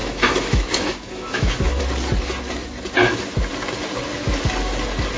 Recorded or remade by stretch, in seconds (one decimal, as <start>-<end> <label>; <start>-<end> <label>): 0.0-1.8 remade; 1.8-5.2 recorded